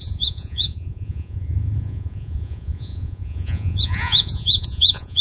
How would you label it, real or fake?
fake